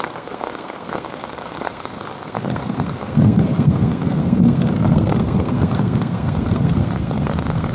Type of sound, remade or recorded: remade